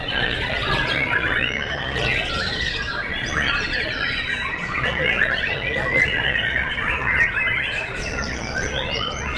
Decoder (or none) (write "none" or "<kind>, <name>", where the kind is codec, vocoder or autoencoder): vocoder, Vocos